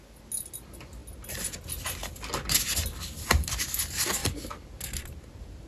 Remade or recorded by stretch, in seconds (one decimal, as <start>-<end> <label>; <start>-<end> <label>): 0.0-5.7 recorded